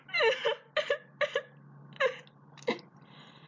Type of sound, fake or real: real